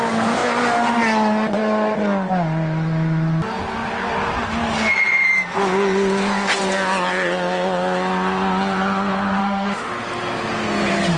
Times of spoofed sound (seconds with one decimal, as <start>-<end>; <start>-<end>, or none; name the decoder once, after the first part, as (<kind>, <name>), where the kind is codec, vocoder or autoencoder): 9.4-9.9 (autoencoder, DAC-VAE)